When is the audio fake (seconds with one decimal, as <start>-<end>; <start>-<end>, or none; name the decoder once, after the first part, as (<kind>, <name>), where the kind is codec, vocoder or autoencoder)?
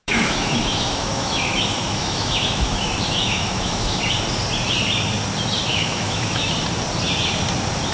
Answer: 0.0-4.0 (autoencoder, DAC-VAE); 5.7-6.5